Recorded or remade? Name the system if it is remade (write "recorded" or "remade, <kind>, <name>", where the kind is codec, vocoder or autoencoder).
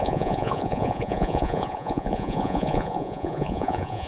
remade, vocoder, Vocos